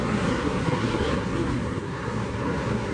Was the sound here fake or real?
fake